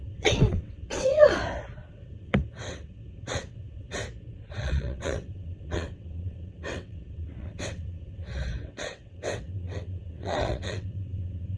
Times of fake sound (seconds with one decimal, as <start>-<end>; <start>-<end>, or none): 0.0-1.4; 1.9-4.0; 4.5-11.6